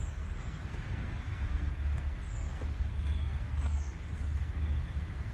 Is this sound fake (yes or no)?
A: yes